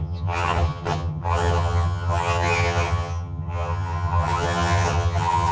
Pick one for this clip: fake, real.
fake